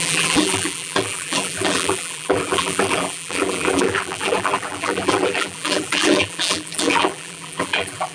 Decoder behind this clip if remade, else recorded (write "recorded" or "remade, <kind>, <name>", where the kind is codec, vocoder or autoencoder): remade, vocoder, BigVGAN v2